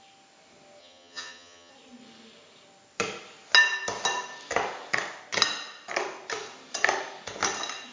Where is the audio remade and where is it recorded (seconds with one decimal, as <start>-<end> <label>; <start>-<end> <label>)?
0.0-0.8 recorded; 0.8-1.7 remade; 1.7-7.9 recorded